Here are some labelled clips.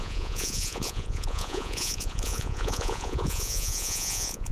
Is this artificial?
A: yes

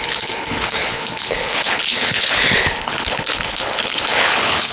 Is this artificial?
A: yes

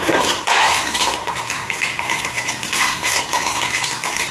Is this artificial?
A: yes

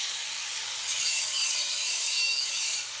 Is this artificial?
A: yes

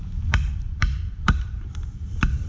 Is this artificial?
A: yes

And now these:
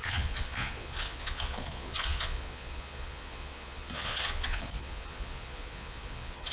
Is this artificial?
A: yes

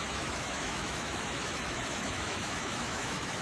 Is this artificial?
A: yes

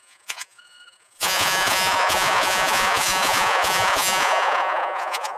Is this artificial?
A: yes